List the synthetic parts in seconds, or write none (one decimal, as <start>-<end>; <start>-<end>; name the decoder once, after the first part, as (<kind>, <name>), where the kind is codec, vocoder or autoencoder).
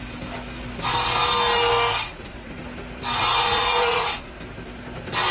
2.0-2.6 (vocoder, Vocos); 3.3-4.3